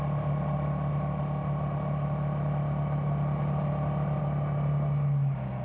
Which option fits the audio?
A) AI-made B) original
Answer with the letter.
B